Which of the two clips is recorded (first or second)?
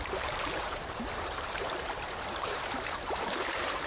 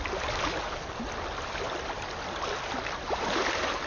second